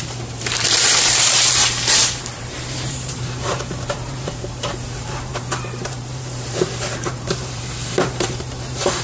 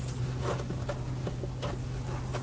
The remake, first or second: first